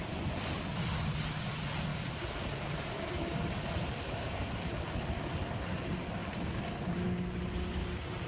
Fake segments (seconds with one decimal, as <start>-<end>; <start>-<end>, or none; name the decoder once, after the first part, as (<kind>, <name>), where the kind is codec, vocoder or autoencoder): none